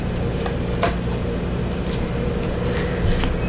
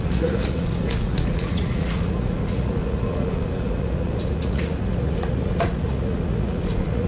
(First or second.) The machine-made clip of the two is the second